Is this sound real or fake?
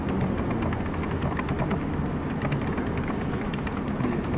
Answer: real